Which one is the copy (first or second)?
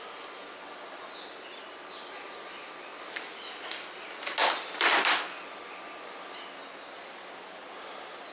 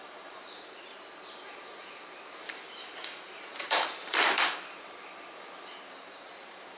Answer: second